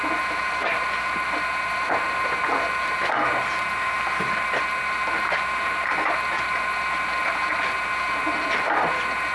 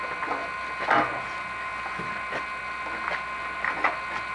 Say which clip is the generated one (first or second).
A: first